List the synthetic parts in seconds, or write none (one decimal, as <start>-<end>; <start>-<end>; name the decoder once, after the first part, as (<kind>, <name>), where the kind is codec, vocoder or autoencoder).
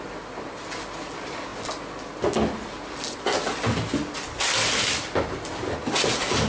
none